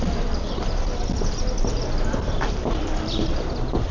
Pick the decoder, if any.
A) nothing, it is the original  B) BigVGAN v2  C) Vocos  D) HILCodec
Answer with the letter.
B